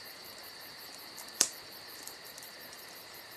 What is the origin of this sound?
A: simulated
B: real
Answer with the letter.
A